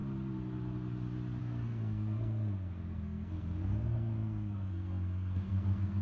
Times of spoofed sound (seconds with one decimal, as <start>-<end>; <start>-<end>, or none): 1.4-6.0